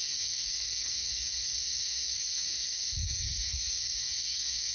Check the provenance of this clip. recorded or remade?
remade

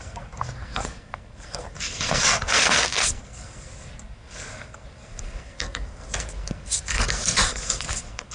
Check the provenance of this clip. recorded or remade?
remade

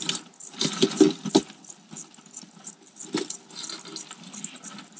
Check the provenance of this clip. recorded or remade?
recorded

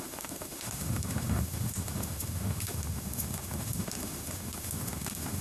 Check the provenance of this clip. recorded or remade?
remade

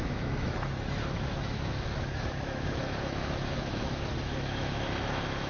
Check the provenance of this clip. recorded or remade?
remade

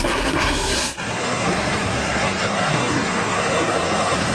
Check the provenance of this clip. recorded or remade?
remade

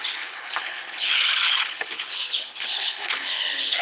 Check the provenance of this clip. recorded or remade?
remade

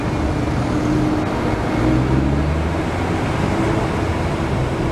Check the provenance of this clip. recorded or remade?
recorded